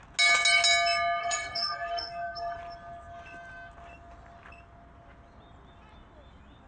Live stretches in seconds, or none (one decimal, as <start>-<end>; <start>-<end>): 0.0-1.2; 2.6-6.7